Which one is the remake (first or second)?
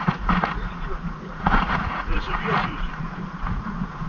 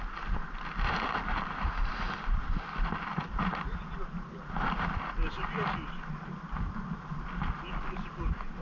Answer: first